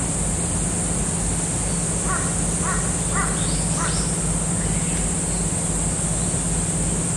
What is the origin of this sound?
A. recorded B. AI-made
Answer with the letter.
A